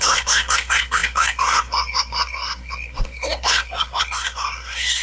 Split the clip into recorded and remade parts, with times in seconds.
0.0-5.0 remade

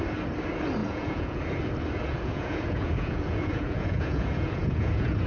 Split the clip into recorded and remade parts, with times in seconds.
0.0-0.8 recorded; 0.8-1.4 remade; 1.4-2.1 recorded; 2.1-5.3 remade

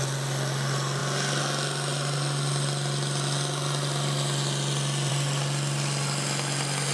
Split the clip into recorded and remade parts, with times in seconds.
0.0-6.9 recorded